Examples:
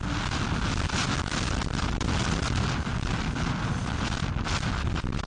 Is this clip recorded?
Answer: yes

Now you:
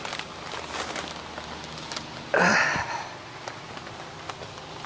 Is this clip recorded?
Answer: yes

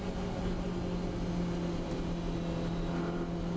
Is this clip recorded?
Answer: yes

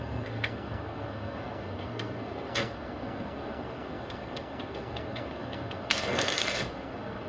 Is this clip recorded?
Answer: no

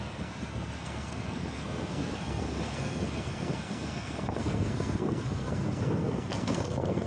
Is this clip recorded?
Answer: no